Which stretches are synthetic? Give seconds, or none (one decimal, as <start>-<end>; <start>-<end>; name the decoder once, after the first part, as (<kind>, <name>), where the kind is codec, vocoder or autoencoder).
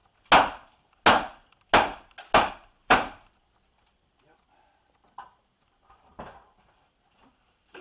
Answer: 2.5-2.9 (vocoder, BigVGAN v2); 6.1-7.8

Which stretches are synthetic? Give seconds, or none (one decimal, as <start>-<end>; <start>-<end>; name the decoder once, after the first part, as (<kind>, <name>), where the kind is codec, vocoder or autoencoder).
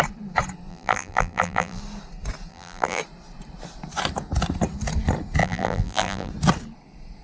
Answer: 0.7-1.8 (vocoder, BigVGAN v2); 2.5-3.0; 5.4-6.3